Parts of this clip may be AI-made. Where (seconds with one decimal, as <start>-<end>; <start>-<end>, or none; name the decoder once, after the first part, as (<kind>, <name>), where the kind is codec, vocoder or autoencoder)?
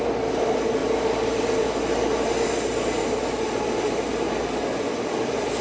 none